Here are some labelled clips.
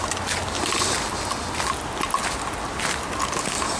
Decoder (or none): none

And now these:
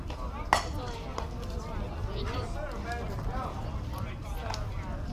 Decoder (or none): none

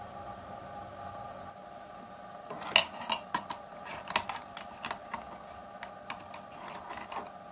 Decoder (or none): none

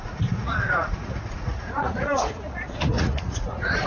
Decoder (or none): vocoder, Vocos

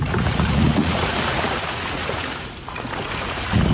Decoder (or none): vocoder, Vocos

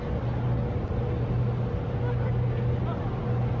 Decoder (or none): none